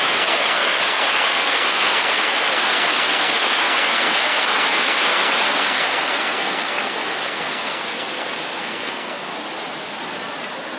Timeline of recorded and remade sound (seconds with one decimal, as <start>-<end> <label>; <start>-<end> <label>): 0.0-9.3 remade; 9.3-10.8 recorded

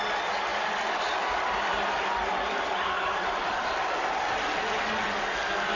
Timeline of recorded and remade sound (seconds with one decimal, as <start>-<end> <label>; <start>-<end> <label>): 0.0-5.8 recorded

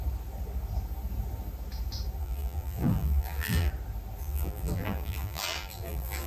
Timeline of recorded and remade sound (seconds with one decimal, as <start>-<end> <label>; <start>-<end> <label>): 0.0-2.2 recorded; 2.2-3.7 remade; 3.7-4.2 recorded; 4.2-6.3 remade

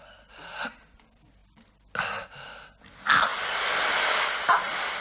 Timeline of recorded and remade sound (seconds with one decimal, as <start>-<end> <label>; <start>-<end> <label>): 0.0-5.0 recorded

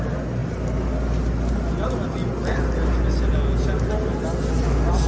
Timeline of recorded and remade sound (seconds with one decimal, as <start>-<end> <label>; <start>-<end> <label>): 0.0-5.1 recorded

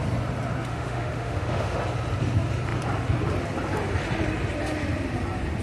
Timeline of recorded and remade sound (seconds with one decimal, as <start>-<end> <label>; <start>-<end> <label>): 0.0-0.7 recorded; 0.7-1.8 remade; 1.8-5.6 recorded

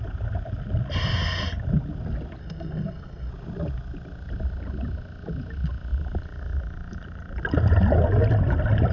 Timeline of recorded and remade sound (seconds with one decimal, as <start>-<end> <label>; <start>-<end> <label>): 0.0-2.4 recorded; 2.4-3.3 remade; 3.3-8.9 recorded

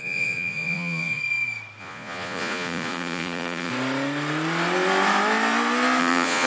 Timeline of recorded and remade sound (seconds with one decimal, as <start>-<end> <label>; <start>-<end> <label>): 0.0-1.2 remade; 1.2-1.8 recorded; 1.8-3.7 remade; 3.7-6.0 recorded; 6.0-6.5 remade